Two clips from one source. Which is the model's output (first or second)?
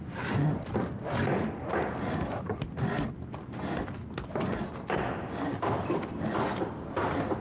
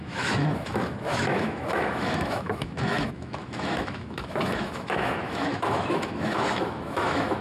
second